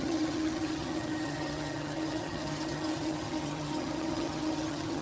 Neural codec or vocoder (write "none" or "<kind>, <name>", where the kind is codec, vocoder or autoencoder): vocoder, HiFi-GAN